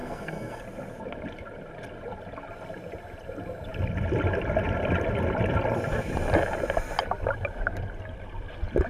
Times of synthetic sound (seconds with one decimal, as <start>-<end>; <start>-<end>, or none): 0.0-0.6